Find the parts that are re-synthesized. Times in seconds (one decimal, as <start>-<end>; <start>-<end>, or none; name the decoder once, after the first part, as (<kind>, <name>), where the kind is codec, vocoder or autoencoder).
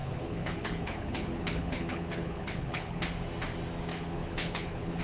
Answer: 0.0-3.0 (codec, HILCodec); 3.9-5.0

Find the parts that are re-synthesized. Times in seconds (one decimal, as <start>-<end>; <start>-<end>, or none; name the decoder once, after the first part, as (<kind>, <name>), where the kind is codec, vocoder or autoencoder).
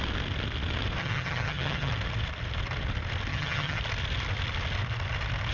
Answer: 1.0-1.9 (vocoder, HiFi-GAN); 3.3-3.8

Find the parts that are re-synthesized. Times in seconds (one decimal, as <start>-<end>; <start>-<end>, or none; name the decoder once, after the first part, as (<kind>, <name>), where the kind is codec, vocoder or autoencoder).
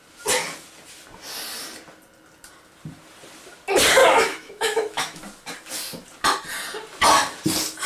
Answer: 4.0-5.2 (autoencoder, DAC-VAE)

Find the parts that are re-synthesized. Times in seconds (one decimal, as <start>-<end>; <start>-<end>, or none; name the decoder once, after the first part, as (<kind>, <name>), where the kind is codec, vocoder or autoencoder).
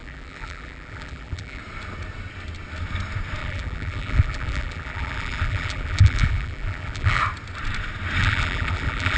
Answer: 0.0-1.6 (vocoder, BigVGAN v2); 3.4-7.2; 8.2-9.2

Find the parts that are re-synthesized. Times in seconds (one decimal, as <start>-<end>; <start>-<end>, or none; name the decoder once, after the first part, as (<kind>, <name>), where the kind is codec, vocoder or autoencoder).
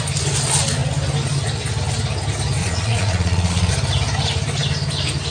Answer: 2.6-3.7 (vocoder, Vocos)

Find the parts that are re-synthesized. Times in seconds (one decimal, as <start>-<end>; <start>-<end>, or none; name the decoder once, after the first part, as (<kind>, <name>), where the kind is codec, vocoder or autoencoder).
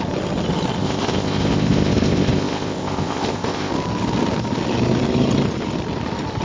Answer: 0.8-3.7 (codec, ZipCodec)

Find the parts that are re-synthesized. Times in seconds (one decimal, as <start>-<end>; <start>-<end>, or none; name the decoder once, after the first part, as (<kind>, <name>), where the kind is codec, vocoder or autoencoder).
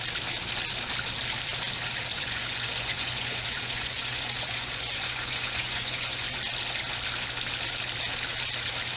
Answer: 2.1-6.4 (vocoder, Vocos)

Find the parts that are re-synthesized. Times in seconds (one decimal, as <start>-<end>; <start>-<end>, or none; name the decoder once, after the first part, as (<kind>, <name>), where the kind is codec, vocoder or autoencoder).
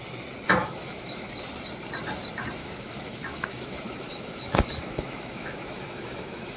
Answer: 0.6-1.3 (autoencoder, DAC-VAE); 2.6-6.6